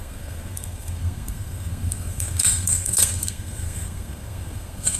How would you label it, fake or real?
fake